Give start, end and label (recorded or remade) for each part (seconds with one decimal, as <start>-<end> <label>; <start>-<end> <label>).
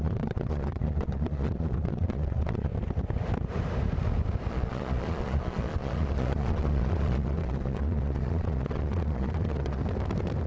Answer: 0.0-2.7 remade; 2.7-4.5 recorded; 4.5-9.8 remade; 9.8-10.5 recorded